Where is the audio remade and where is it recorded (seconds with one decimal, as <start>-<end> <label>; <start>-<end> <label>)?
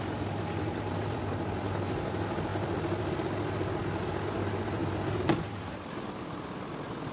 0.0-7.1 recorded